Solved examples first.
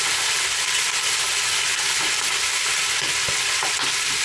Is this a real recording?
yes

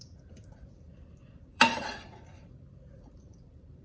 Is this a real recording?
no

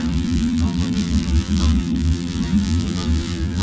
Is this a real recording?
no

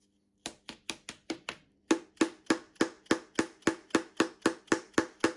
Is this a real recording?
yes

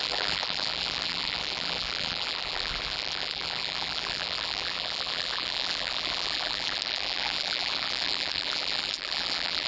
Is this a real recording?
no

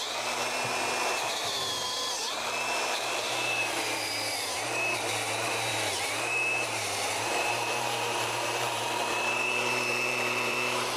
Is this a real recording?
no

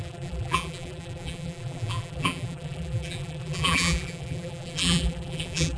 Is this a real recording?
no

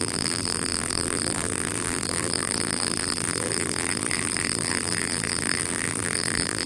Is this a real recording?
no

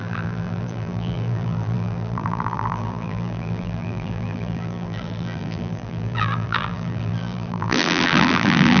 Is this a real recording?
no